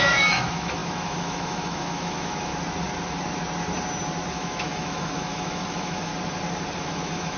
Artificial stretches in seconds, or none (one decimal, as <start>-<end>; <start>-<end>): 0.0-2.5; 4.3-6.1; 6.8-7.4